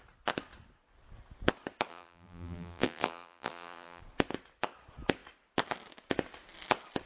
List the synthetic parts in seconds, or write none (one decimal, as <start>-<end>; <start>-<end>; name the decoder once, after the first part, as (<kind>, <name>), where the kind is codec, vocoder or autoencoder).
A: 1.9-4.0 (vocoder, BigVGAN v2)